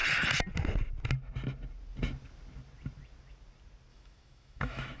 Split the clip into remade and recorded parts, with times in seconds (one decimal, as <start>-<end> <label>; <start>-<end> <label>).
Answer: 0.0-3.9 recorded; 3.9-5.0 remade